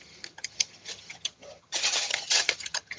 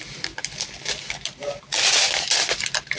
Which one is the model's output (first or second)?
first